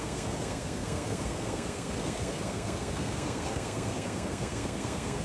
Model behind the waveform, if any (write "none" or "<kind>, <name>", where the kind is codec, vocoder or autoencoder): codec, SNAC